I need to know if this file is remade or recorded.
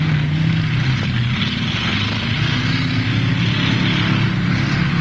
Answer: recorded